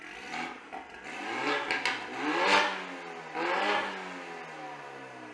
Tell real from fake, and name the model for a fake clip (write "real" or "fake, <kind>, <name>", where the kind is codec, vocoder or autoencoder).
real